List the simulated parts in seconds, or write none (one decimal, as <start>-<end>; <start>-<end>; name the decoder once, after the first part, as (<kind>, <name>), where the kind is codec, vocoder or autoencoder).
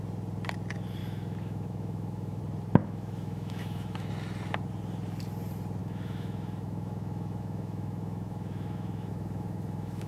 1.0-2.4 (autoencoder, DAC-VAE); 2.8-4.1; 5.8-10.1